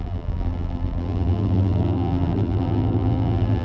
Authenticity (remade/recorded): remade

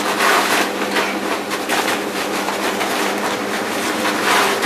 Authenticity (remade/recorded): recorded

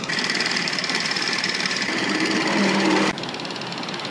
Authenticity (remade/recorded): remade